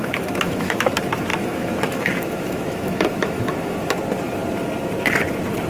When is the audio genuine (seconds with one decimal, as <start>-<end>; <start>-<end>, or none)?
0.9-1.3; 3.9-5.7

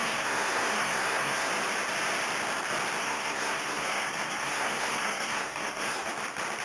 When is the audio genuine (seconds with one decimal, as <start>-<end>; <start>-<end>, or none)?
1.5-3.0; 6.1-6.6

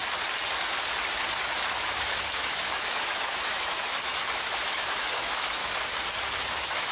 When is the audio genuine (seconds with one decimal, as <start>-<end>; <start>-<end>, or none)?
0.0-1.7; 5.6-6.4

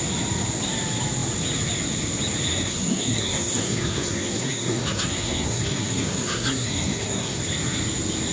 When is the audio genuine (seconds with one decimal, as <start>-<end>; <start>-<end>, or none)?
0.0-2.5; 7.4-8.3

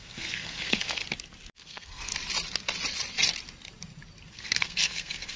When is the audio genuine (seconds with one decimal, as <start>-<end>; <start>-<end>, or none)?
1.0-1.5; 2.1-4.3